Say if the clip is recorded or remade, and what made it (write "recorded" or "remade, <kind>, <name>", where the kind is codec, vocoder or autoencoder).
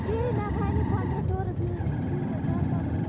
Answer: recorded